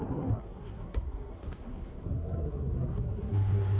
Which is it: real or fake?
fake